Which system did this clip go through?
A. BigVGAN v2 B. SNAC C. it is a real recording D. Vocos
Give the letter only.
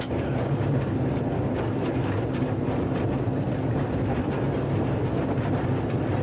C